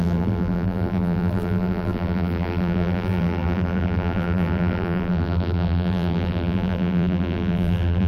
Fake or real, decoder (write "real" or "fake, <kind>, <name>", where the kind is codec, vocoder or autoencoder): fake, vocoder, BigVGAN v2